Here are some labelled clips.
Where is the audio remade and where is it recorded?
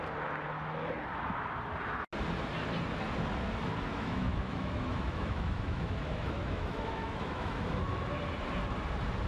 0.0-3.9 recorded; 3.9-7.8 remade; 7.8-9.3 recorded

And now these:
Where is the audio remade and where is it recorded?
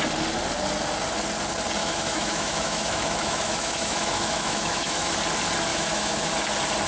0.0-1.8 recorded; 1.8-5.1 remade; 5.1-5.7 recorded; 5.7-6.3 remade; 6.3-6.9 recorded